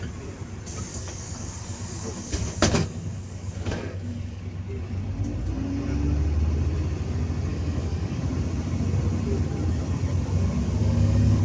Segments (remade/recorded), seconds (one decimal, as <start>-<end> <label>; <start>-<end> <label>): 0.0-0.9 recorded; 0.9-4.4 remade; 4.4-7.5 recorded; 7.5-8.2 remade; 8.2-10.8 recorded; 10.8-11.4 remade